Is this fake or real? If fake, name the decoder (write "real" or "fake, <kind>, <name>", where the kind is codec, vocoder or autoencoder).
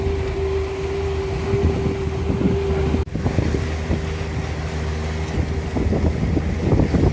real